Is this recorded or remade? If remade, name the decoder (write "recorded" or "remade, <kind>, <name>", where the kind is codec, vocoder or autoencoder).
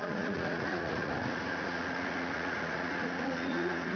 remade, vocoder, Vocos